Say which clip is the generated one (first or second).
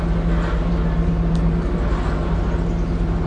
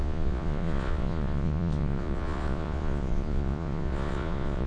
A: second